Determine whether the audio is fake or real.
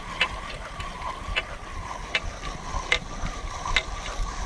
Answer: real